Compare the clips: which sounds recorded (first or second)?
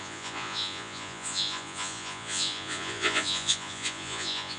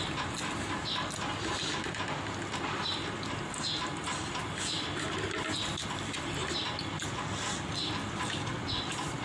second